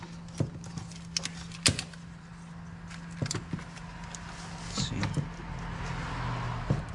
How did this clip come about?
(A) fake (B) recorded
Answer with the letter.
B